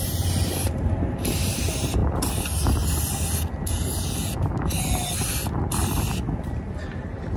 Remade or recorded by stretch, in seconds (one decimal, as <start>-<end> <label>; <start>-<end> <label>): 0.0-2.0 remade; 2.0-6.4 recorded; 6.4-7.4 remade